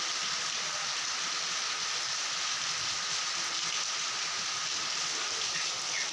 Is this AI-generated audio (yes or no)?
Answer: no